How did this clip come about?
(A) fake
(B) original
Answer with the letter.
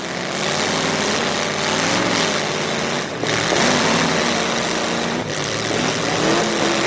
B